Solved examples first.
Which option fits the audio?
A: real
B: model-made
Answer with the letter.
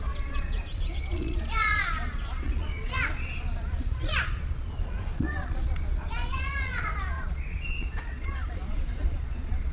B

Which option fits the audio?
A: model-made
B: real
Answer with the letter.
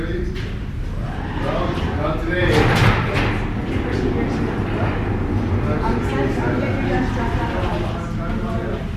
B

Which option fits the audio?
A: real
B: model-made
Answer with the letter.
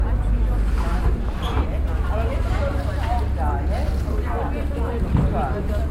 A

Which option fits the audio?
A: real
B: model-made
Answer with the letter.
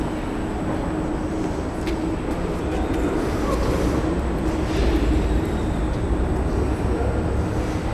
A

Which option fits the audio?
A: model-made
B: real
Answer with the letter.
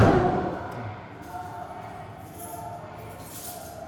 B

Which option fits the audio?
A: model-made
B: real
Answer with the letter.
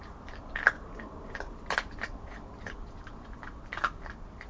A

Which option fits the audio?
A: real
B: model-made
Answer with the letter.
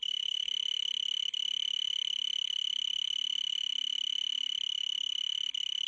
A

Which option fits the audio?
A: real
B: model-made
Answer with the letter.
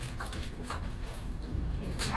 B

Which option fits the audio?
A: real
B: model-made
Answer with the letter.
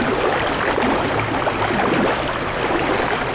A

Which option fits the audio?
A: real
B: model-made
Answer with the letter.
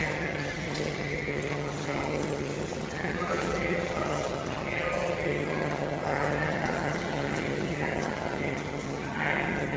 B